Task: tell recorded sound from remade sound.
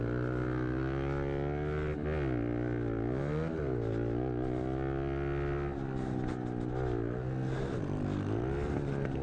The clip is recorded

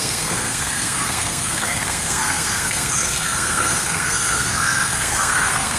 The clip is remade